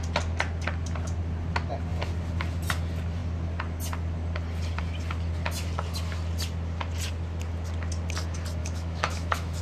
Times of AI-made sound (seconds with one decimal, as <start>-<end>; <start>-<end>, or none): 8.6-9.6